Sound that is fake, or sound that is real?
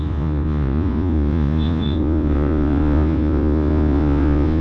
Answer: fake